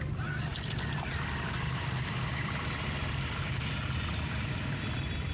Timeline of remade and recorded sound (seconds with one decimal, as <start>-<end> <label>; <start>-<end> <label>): 0.0-5.3 recorded

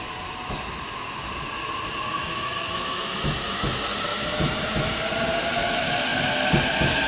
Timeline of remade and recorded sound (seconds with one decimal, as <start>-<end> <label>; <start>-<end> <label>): 0.0-2.2 recorded; 2.2-3.6 remade; 3.6-4.1 recorded; 4.1-4.9 remade; 4.9-7.1 recorded

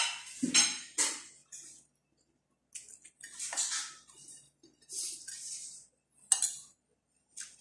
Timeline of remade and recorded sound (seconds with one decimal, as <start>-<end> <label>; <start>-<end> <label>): 0.0-7.6 recorded

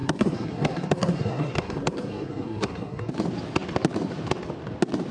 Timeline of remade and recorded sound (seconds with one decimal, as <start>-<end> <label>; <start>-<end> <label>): 0.0-3.1 remade; 3.1-5.1 recorded

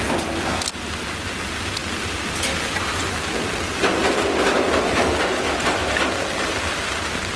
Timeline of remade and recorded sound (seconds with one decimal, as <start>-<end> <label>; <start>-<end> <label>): 0.0-1.8 recorded; 1.8-2.8 remade; 2.8-7.4 recorded